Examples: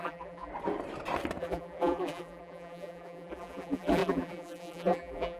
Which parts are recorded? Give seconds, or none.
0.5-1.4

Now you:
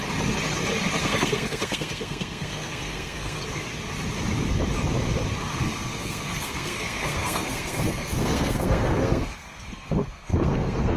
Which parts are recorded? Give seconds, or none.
0.0-1.0; 3.4-5.5

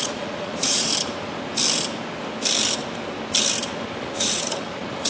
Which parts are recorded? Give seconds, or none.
0.9-4.0

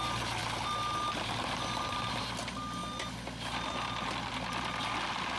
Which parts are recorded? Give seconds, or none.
0.0-5.4

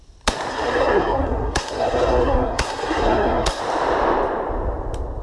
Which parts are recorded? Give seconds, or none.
0.0-0.5; 3.6-5.2

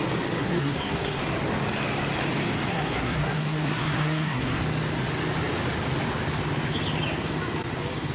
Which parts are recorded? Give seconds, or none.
0.0-0.4; 1.2-2.7; 4.6-8.1